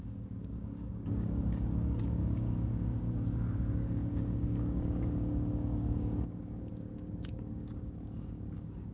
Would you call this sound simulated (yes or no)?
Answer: yes